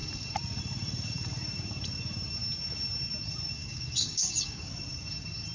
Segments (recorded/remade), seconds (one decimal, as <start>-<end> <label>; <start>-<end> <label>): 0.0-3.6 recorded; 3.6-4.7 remade; 4.7-5.5 recorded